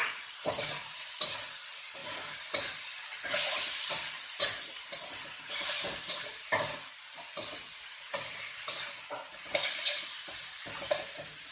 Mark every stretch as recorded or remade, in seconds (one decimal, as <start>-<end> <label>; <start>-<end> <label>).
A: 0.0-0.8 remade; 0.8-11.5 recorded